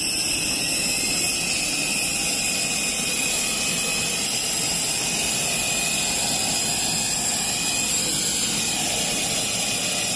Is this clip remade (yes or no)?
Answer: no